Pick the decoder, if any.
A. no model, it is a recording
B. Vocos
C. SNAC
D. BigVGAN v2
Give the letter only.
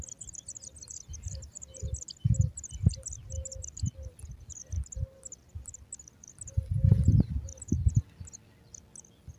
A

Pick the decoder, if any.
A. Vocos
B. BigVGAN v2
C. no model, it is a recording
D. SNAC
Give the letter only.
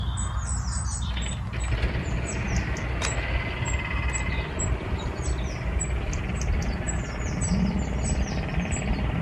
C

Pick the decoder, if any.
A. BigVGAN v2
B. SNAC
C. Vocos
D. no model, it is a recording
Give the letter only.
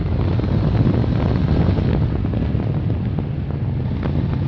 D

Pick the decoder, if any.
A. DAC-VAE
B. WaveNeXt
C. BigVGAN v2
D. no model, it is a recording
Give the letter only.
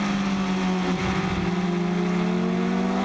D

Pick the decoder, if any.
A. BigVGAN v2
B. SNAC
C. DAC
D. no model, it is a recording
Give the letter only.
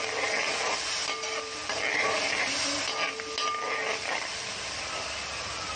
A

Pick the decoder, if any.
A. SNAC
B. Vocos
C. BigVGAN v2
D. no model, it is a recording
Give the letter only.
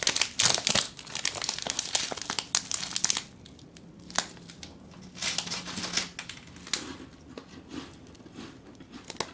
D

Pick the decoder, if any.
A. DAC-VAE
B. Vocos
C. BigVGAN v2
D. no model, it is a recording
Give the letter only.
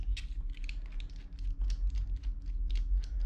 D